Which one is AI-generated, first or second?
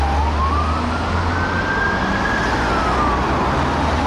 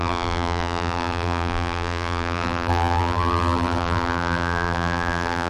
second